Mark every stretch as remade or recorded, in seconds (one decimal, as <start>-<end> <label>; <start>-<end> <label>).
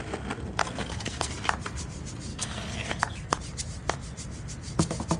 0.0-0.6 recorded; 0.6-1.3 remade; 1.3-2.3 recorded; 2.3-3.4 remade; 3.4-5.2 recorded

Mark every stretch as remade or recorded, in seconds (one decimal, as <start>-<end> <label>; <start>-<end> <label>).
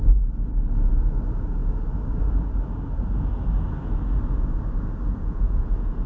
0.0-5.1 recorded; 5.1-6.1 remade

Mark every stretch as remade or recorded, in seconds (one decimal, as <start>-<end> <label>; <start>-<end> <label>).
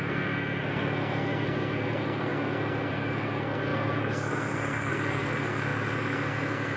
0.0-6.8 remade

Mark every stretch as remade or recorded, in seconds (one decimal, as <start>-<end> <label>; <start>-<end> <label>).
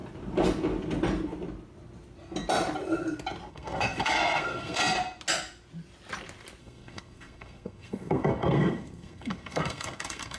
0.0-3.5 recorded; 3.5-4.8 remade; 4.8-6.6 recorded; 6.6-10.4 remade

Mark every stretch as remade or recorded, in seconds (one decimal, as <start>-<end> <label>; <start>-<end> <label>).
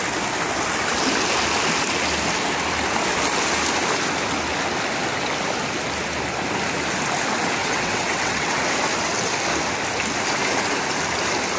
0.0-7.6 recorded; 7.6-8.6 remade; 8.6-11.6 recorded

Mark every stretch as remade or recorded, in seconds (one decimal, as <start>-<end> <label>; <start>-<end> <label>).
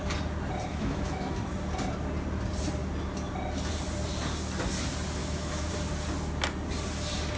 0.0-0.7 recorded; 0.7-1.4 remade; 1.4-5.2 recorded; 5.2-5.7 remade; 5.7-7.4 recorded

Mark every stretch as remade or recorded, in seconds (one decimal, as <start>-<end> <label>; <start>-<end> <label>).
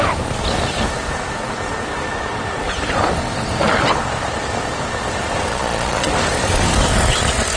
0.0-5.5 recorded; 5.5-6.1 remade; 6.1-7.6 recorded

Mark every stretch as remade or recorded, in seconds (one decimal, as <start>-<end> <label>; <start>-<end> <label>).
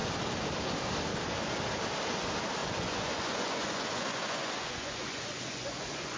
0.0-2.6 recorded; 2.6-6.2 remade